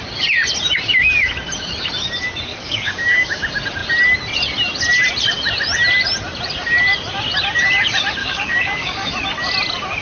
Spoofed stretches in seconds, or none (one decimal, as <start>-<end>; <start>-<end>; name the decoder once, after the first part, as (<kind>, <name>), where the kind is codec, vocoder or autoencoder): 2.5-3.4 (codec, DAC); 8.2-9.1